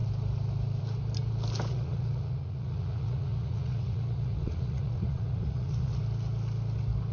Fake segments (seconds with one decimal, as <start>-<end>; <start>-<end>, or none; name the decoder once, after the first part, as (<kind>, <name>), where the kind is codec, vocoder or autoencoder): 1.7-6.0 (vocoder, Vocos)